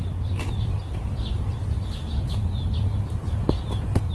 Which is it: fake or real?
real